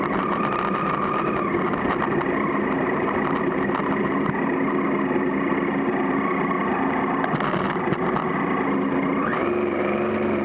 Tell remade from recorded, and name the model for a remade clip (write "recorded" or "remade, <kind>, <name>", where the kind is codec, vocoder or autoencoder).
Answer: recorded